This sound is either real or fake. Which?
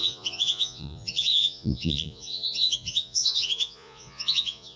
fake